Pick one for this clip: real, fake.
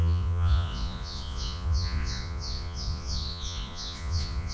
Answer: fake